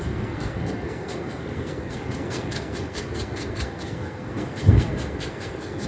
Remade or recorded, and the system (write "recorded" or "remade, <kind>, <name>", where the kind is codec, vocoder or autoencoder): remade, codec, SNAC